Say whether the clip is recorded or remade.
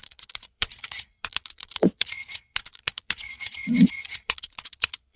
remade